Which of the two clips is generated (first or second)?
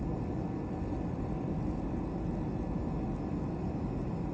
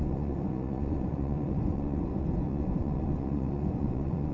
second